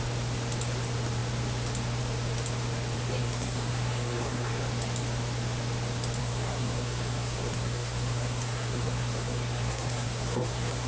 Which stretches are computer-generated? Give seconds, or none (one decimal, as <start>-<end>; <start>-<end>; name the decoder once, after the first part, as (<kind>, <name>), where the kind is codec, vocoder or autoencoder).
3.2-4.5 (codec, SNAC); 6.2-10.9